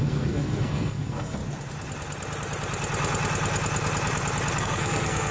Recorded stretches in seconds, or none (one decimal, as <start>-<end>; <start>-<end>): 1.4-4.6